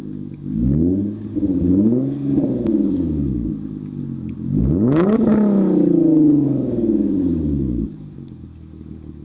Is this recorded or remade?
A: remade